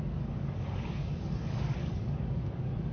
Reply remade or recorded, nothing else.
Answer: remade